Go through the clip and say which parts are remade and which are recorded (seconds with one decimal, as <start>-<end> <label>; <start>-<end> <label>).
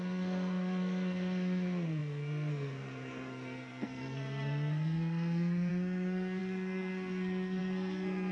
0.0-8.3 remade